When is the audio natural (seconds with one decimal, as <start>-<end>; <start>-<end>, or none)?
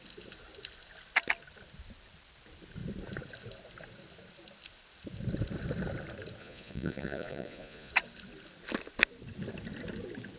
0.0-6.4; 7.9-10.4